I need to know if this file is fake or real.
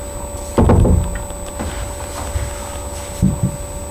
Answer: real